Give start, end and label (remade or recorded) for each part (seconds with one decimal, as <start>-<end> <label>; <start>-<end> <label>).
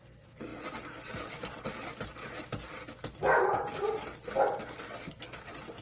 0.0-5.8 recorded